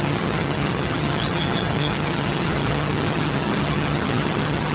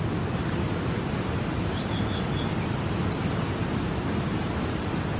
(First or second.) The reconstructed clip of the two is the first